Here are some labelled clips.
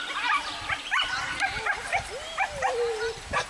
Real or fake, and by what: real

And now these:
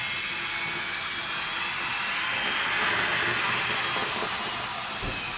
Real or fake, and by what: real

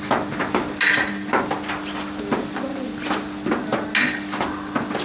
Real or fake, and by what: real